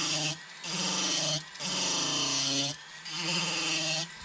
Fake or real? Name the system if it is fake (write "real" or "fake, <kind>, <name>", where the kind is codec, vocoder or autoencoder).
real